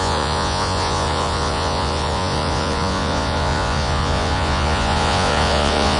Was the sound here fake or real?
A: fake